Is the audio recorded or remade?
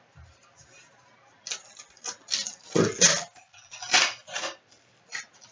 recorded